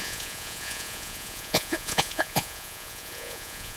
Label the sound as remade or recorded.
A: remade